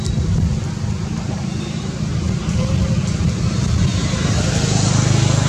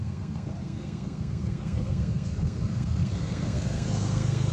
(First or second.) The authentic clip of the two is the first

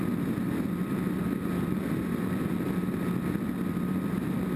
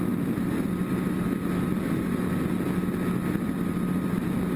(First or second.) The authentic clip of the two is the second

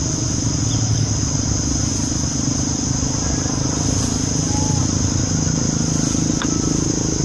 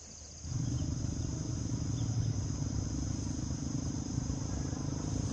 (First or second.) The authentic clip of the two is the first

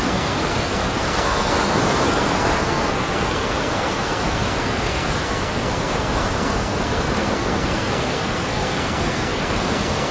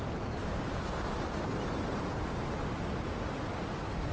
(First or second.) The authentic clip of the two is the second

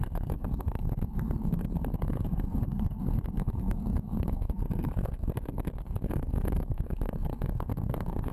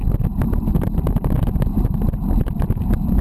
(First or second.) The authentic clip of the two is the second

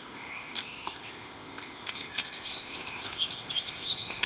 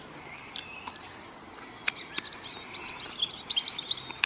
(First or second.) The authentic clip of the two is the second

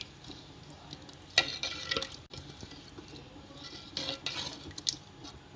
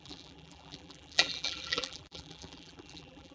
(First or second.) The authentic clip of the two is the first